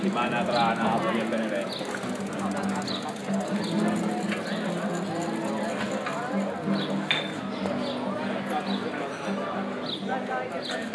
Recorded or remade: recorded